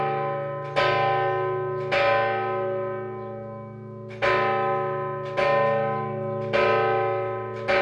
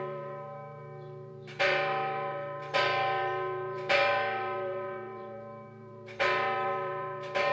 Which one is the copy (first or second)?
second